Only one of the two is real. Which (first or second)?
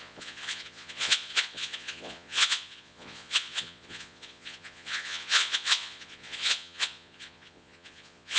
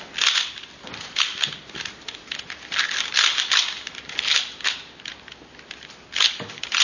second